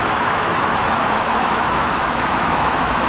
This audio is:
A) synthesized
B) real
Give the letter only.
A